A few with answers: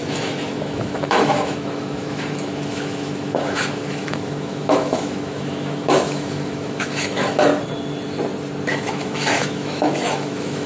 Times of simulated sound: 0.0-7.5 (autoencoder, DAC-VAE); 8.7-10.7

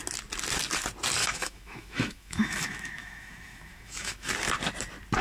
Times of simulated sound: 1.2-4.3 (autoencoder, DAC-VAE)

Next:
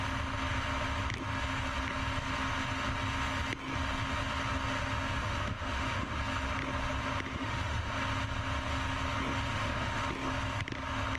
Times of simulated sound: 5.2-6.2 (autoencoder, DAC-VAE); 7.3-7.9; 9.5-10.0